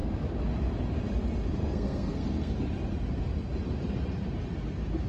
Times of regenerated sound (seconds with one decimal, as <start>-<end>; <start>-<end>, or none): 1.6-2.5

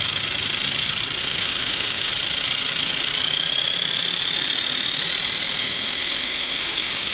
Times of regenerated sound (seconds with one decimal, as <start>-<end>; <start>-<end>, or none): 1.2-2.1; 5.6-7.1